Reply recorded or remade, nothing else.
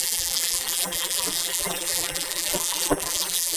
remade